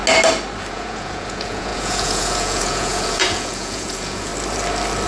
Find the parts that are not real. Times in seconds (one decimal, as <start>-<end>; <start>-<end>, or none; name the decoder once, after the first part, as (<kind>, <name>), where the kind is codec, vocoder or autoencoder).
0.7-4.3 (vocoder, Vocos)